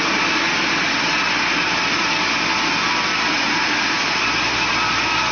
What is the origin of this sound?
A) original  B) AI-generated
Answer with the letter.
A